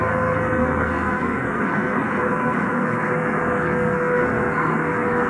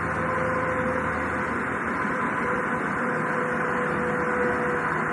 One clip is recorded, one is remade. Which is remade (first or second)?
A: first